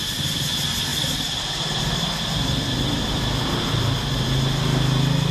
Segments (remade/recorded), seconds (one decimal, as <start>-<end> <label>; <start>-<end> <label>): 0.0-0.5 remade; 0.5-0.9 recorded; 0.9-3.5 remade; 3.5-5.3 recorded